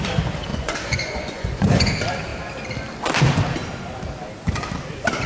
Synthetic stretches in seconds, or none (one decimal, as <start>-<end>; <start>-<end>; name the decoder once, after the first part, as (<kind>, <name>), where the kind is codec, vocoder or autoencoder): 0.5-1.9 (vocoder, Vocos)